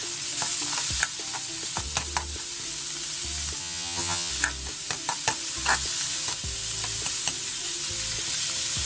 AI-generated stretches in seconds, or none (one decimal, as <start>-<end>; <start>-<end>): 3.6-4.3